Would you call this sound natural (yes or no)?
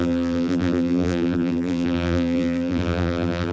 no